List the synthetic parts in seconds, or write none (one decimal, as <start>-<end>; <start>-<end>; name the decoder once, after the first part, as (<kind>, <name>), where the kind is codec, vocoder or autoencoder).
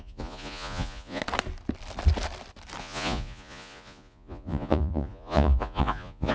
0.0-1.2 (vocoder, Vocos); 2.8-6.3